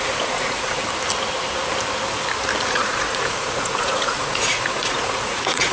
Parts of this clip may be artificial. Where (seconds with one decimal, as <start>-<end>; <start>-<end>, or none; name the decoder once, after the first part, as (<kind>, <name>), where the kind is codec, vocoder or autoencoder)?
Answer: 0.0-0.8 (vocoder, Vocos); 2.7-5.7